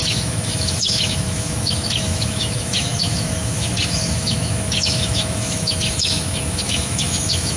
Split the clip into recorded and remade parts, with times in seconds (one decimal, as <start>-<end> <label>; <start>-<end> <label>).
0.0-7.6 remade